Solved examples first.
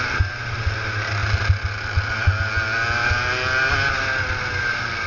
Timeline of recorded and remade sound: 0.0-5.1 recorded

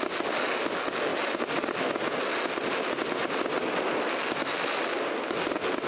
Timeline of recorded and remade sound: 0.0-5.9 recorded

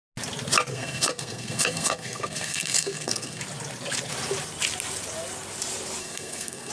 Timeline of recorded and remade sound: 0.0-0.7 recorded; 0.7-3.4 remade; 3.4-6.0 recorded; 6.0-6.7 remade

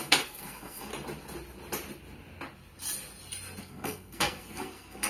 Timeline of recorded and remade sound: 0.0-0.9 remade; 0.9-3.6 recorded; 3.6-5.1 remade

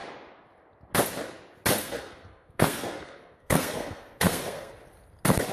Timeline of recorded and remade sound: 0.0-1.8 recorded; 1.8-4.7 remade; 4.7-5.5 recorded